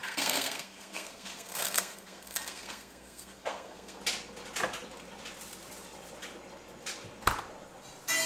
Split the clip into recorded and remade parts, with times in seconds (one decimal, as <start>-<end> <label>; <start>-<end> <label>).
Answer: 0.0-4.0 remade; 4.0-8.3 recorded